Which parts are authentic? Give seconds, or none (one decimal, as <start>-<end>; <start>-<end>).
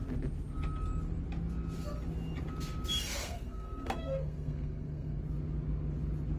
0.0-3.2; 5.2-6.4